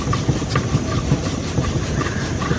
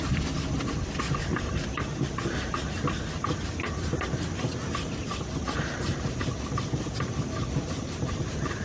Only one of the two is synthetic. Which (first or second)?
first